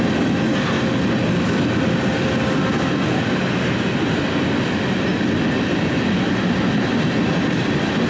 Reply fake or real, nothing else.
real